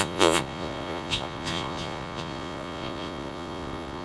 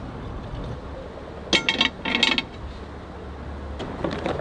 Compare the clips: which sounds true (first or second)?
second